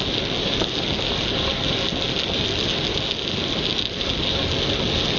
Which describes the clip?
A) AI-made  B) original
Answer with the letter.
B